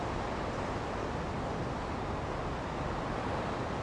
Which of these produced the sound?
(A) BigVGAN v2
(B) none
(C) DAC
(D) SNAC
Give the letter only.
B